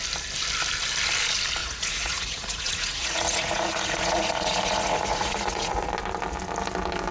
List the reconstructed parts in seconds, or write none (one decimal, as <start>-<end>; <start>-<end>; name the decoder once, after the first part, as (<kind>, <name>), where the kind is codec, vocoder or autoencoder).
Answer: 1.6-5.9 (vocoder, Vocos)